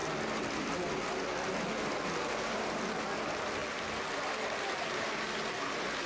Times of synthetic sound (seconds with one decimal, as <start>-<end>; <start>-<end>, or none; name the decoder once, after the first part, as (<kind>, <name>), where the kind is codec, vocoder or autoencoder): none